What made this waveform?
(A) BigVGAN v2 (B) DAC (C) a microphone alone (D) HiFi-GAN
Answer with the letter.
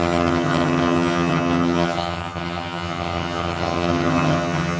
D